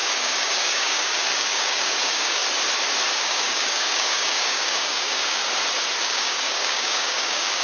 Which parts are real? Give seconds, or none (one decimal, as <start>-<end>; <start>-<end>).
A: 2.4-3.1; 5.4-6.0

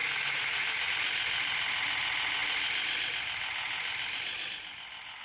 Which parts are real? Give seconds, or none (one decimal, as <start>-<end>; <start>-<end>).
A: 0.9-5.2

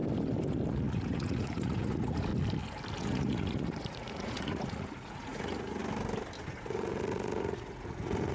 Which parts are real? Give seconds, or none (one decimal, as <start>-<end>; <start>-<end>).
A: 0.0-0.7; 2.3-3.0; 5.8-6.6